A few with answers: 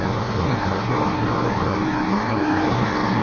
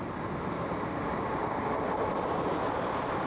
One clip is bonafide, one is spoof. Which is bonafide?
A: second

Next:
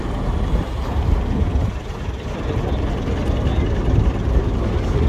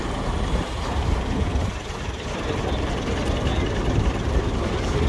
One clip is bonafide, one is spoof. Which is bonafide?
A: first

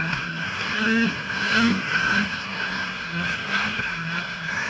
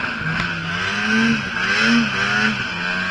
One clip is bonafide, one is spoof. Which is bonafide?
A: second